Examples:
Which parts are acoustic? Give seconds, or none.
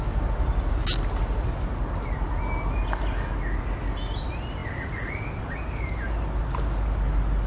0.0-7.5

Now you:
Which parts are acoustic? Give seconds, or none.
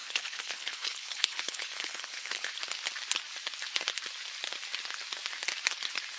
2.5-6.2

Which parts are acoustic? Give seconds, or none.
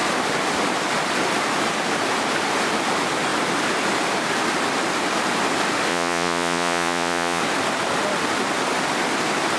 0.0-5.9; 7.4-9.6